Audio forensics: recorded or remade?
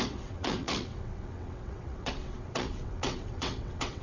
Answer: remade